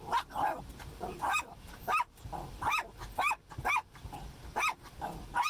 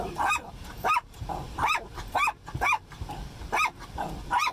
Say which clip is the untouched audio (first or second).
first